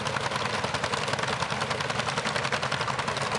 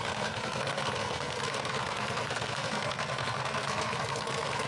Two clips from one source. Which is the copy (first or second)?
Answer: second